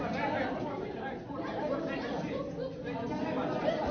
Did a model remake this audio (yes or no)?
no